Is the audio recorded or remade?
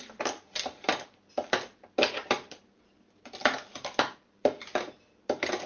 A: recorded